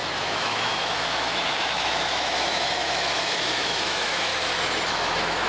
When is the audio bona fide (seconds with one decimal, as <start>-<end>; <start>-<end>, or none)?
4.3-4.9